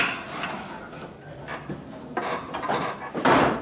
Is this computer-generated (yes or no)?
no